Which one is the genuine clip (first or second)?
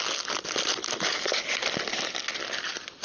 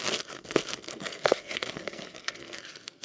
first